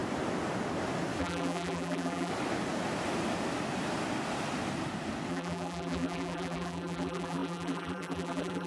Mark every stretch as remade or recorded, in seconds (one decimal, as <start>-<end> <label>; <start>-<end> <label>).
0.0-1.2 recorded; 1.2-2.3 remade; 2.3-5.3 recorded; 5.3-8.7 remade